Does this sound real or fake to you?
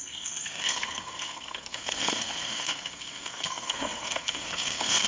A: fake